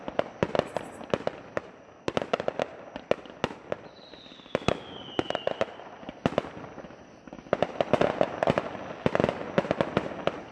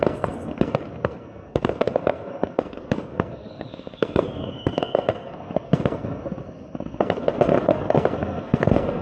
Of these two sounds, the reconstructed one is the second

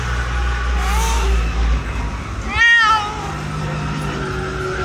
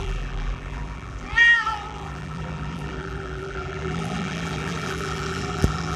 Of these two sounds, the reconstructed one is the second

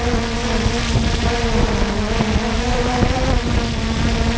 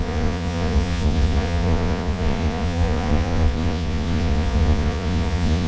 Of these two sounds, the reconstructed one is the second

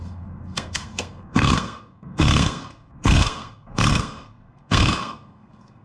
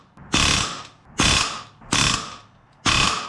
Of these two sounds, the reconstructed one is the first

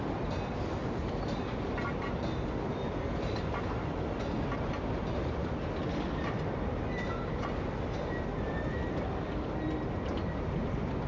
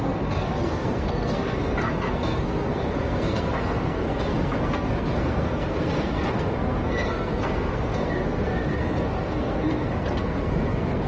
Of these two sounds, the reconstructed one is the second